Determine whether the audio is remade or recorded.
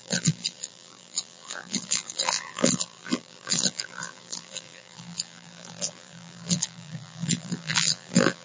remade